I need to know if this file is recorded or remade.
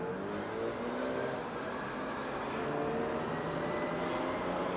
recorded